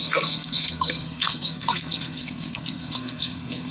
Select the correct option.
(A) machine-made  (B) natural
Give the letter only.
A